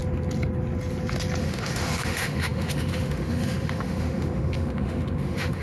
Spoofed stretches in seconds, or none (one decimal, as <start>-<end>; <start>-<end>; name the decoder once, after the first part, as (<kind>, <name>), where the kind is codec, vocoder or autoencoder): 1.4-5.6 (autoencoder, DAC-VAE)